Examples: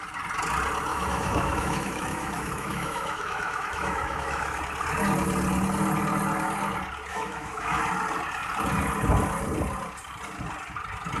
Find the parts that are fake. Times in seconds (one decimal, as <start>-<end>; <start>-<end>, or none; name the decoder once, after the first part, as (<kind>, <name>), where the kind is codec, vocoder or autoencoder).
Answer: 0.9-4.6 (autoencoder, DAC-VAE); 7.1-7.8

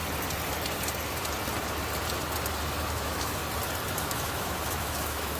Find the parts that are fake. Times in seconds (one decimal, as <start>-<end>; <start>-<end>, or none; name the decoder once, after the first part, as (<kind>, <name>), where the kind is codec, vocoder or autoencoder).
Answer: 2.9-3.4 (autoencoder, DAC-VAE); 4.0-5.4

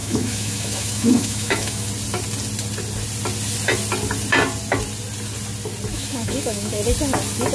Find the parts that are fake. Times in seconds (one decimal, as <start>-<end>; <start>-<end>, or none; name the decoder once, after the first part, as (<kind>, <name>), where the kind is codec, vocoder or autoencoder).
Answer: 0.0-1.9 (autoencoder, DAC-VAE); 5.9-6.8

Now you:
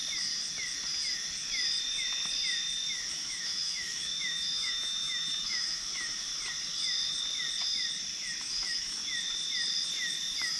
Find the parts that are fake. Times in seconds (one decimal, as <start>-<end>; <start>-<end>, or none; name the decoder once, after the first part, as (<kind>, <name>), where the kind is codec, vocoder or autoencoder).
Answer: 3.1-6.3 (autoencoder, DAC-VAE); 8.4-9.0

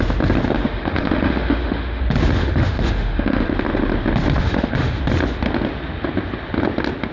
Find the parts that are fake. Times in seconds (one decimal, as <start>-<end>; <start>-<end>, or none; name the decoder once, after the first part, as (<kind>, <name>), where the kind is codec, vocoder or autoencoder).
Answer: 0.6-2.0 (autoencoder, DAC-VAE); 2.4-3.5; 4.4-5.0

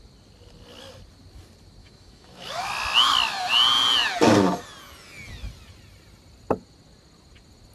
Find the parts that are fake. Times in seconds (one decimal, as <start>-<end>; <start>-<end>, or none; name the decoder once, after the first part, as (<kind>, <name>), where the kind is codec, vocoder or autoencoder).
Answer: 1.8-2.6 (autoencoder, DAC-VAE)

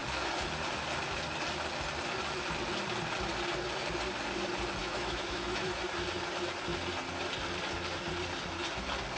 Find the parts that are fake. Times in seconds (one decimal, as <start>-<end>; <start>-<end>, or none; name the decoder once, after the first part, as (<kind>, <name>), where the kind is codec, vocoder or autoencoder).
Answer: 4.8-5.7 (autoencoder, DAC-VAE)